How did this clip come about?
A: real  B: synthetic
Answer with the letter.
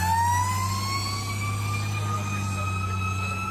A